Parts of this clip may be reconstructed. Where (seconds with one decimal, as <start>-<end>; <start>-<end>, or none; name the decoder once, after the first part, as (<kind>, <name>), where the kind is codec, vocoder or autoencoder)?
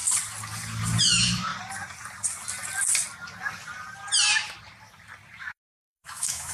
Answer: 1.0-1.5 (autoencoder, DAC-VAE); 5.4-6.5